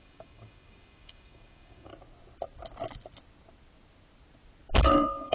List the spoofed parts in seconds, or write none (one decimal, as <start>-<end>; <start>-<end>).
0.0-1.9; 4.8-5.3